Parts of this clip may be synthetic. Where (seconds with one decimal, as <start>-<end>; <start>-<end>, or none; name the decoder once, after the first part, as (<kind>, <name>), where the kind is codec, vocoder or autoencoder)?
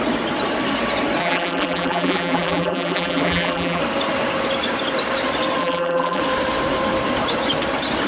1.2-3.8 (vocoder, BigVGAN v2); 5.6-6.2